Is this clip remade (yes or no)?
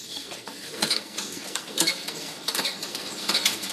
yes